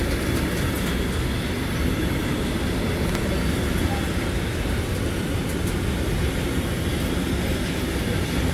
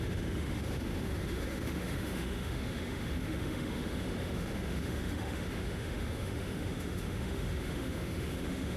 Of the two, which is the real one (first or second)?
first